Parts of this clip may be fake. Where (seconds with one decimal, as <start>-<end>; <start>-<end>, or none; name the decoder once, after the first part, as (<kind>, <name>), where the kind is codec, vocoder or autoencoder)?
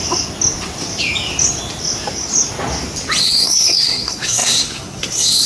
3.2-5.5 (codec, SNAC)